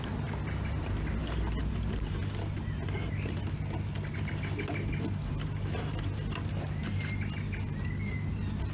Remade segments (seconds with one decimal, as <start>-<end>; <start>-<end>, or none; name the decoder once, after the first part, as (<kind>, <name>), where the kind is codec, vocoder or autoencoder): none